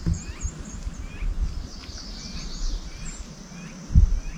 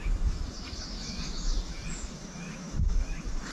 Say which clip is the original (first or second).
first